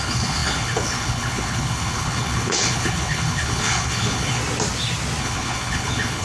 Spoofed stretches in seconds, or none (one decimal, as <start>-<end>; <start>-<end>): 0.0-4.4; 5.2-6.2